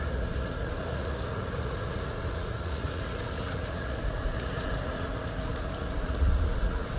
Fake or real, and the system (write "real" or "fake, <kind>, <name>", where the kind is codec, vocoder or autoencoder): fake, vocoder, Vocos